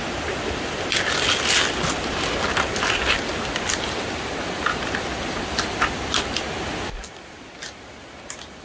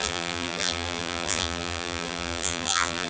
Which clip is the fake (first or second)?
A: second